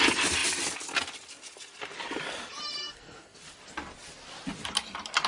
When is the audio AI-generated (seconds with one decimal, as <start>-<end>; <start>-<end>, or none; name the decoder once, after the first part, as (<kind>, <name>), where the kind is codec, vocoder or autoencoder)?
2.8-3.4 (codec, SNAC)